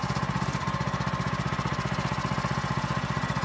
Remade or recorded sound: recorded